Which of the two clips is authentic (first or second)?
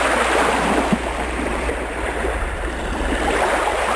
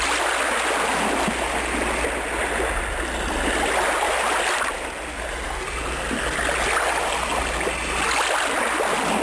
second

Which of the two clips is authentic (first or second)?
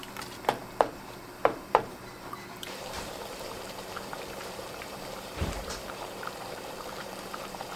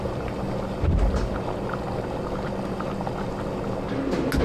second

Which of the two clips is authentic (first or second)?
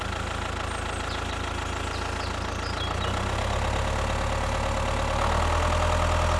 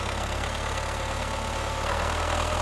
first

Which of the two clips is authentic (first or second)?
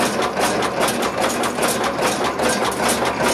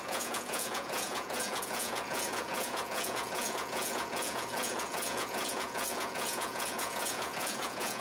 first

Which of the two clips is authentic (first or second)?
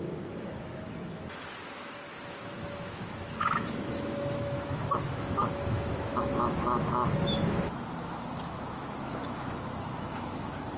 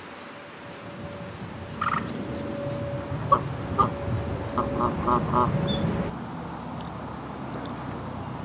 second